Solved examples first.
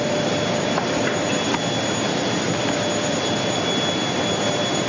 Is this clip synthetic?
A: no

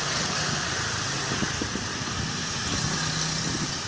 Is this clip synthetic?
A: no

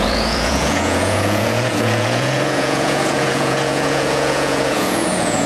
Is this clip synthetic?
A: yes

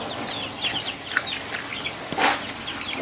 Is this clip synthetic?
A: no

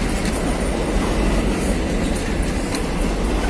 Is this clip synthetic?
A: no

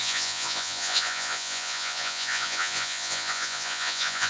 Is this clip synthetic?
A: yes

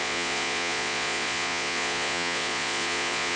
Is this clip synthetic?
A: yes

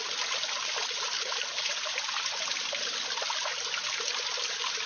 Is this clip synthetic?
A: no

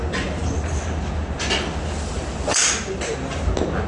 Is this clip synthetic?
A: no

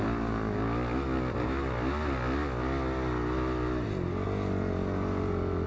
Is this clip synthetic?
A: no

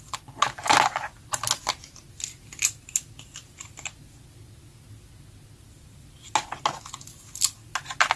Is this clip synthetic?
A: no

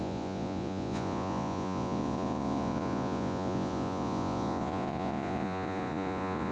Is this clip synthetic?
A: yes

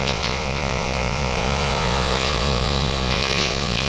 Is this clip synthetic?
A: yes